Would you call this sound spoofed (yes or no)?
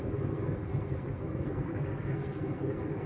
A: yes